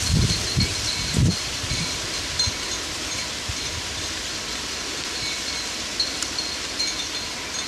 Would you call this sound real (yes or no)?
no